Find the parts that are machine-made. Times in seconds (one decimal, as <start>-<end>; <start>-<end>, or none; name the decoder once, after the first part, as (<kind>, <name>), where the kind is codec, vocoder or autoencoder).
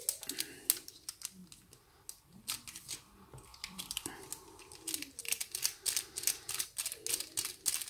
3.5-4.2 (vocoder, BigVGAN v2); 5.2-6.6